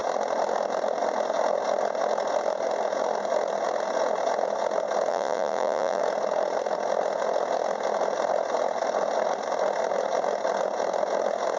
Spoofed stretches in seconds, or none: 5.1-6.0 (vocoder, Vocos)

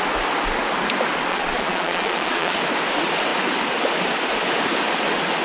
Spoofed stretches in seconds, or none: 1.3-2.6 (vocoder, Vocos)

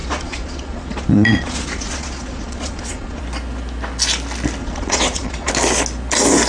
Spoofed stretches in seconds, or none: 0.0-3.2 (vocoder, Vocos); 4.6-5.5

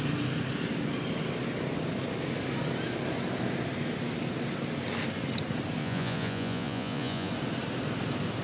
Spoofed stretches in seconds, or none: 5.8-7.3 (vocoder, Vocos)

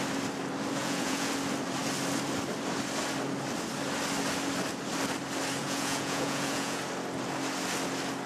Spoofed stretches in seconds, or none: 0.8-1.3 (vocoder, Vocos); 5.6-6.8

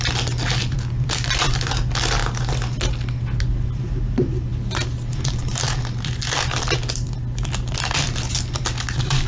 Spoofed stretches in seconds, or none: none

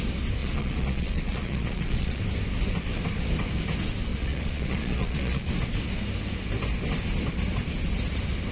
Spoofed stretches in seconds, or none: 0.4-2.2 (vocoder, Vocos); 4.1-5.5